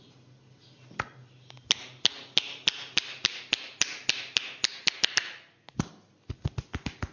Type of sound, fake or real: real